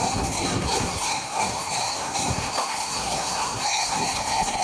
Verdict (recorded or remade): remade